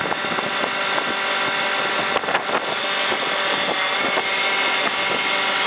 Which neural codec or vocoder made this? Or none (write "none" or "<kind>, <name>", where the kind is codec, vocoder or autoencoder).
none